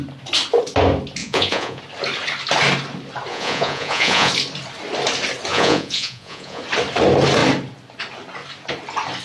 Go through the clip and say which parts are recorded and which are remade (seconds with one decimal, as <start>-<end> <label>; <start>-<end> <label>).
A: 0.0-1.2 recorded; 1.2-1.8 remade; 1.8-3.3 recorded; 3.3-4.3 remade; 4.3-5.5 recorded; 5.5-6.6 remade; 6.6-9.2 recorded